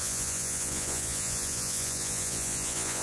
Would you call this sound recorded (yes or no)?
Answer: no